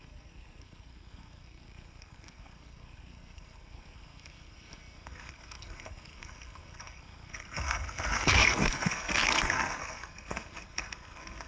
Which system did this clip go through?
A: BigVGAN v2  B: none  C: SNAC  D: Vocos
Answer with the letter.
C